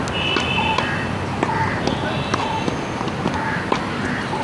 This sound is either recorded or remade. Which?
recorded